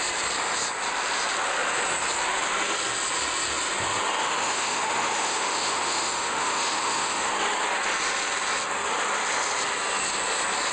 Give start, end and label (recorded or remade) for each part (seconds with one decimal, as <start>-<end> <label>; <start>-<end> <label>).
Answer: 0.0-4.2 recorded; 4.2-7.3 remade; 7.3-10.7 recorded